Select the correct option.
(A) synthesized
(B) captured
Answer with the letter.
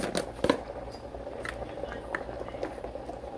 B